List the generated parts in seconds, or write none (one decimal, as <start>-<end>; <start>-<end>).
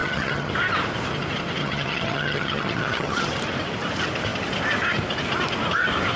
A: 0.0-0.5; 1.6-3.3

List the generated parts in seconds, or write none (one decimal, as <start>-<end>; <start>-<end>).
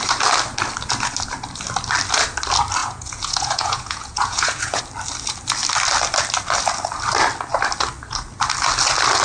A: 2.8-4.8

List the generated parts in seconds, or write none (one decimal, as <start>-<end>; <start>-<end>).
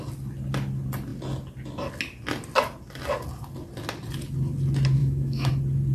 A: 5.0-5.5